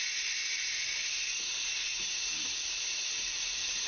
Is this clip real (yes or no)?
no